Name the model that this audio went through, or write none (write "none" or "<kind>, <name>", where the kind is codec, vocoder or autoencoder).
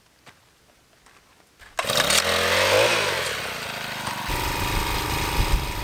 none